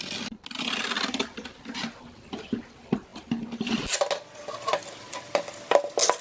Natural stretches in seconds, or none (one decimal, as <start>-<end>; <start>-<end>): 0.0-6.2